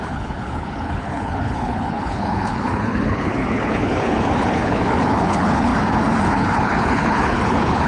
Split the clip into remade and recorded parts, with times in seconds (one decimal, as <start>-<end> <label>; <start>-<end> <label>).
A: 0.0-5.7 remade; 5.7-6.3 recorded; 6.3-7.9 remade